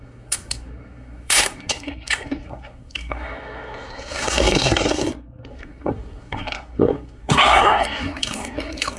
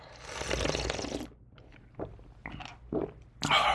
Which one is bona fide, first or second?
second